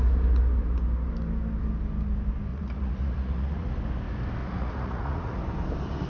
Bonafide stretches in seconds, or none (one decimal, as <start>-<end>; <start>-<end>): 0.0-2.5; 3.7-4.4; 5.4-6.1